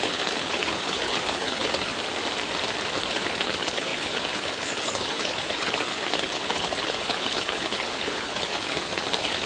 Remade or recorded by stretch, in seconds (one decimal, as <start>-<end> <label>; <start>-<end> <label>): 0.0-1.9 remade; 1.9-3.1 recorded; 3.1-9.5 remade